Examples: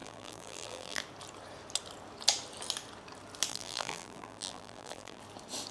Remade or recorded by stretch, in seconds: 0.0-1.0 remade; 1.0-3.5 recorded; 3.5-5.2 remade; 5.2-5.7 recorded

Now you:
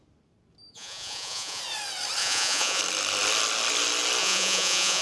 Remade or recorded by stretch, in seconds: 0.0-0.7 recorded; 0.7-1.6 remade; 1.6-2.2 recorded; 2.2-2.8 remade; 2.8-4.2 recorded; 4.2-5.0 remade

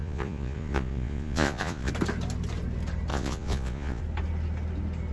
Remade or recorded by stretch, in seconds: 0.0-1.9 remade; 1.9-3.1 recorded; 3.1-4.0 remade; 4.0-5.1 recorded

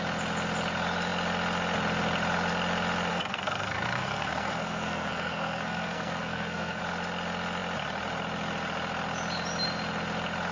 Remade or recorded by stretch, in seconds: 0.0-3.1 recorded; 3.1-6.8 remade; 6.8-10.5 recorded

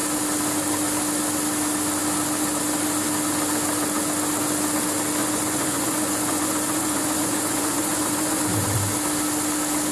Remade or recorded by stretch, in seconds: 0.0-5.2 recorded; 5.2-8.4 remade; 8.4-9.9 recorded

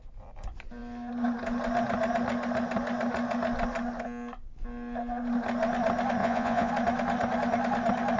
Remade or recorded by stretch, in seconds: 0.0-6.2 recorded; 6.2-6.7 remade; 6.7-8.2 recorded

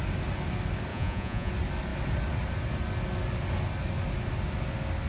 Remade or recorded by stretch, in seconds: 0.0-0.9 recorded; 0.9-1.5 remade; 1.5-5.1 recorded